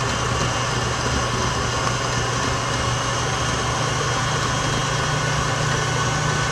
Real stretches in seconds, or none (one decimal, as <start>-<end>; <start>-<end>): 0.0-6.5